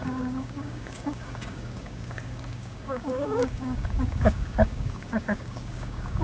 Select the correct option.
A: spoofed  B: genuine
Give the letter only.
A